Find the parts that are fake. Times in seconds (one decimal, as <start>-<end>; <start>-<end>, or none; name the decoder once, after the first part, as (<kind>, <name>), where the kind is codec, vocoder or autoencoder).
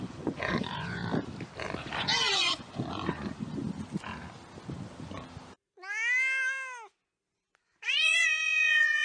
0.0-1.0 (vocoder, Vocos); 1.8-3.6; 7.6-9.0